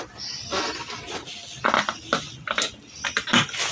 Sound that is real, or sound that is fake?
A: real